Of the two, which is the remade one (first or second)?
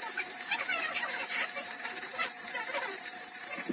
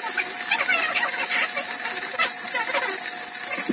first